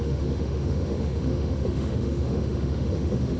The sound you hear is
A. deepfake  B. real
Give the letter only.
A